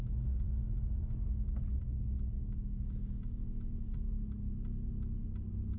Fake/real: real